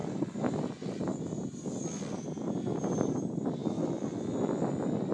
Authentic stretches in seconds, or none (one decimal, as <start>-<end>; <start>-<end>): 0.6-1.1; 1.6-5.1